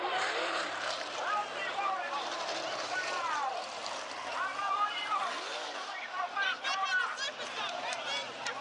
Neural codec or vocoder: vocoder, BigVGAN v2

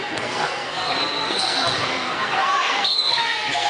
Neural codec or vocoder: codec, SNAC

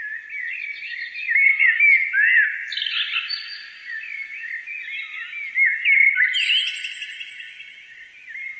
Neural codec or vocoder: none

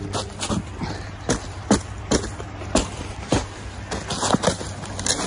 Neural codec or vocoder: none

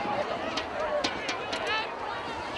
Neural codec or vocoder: none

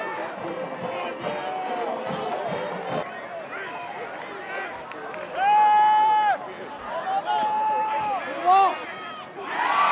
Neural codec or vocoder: none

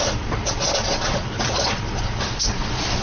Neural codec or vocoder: vocoder, Vocos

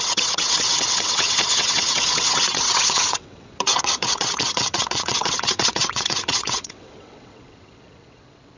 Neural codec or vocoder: vocoder, WaveNeXt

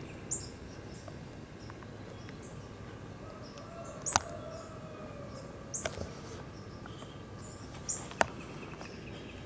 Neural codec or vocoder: none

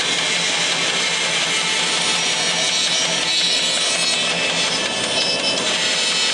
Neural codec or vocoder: none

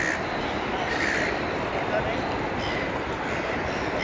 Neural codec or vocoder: none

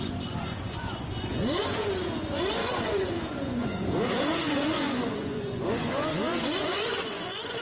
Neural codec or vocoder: vocoder, Vocos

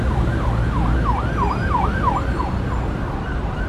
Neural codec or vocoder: none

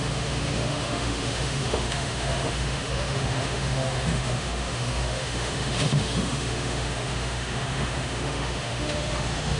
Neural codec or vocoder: autoencoder, DAC-VAE